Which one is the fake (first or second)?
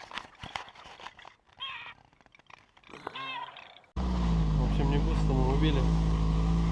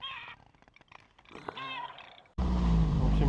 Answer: second